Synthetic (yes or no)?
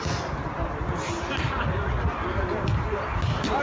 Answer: no